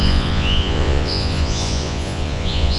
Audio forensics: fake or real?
fake